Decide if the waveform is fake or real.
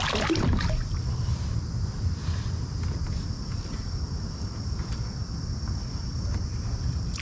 real